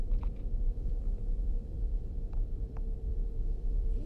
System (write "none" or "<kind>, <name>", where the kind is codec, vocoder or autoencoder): vocoder, BigVGAN v2